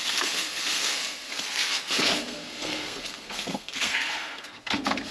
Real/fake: fake